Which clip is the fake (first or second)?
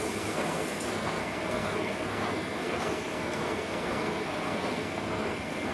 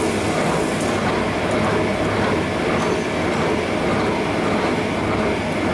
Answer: first